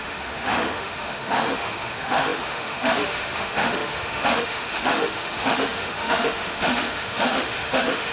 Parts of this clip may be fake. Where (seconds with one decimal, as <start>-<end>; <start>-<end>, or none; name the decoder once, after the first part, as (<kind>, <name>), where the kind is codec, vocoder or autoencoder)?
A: 0.0-8.1 (autoencoder, DAC-VAE)